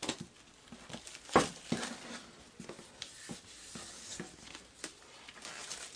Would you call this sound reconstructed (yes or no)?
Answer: no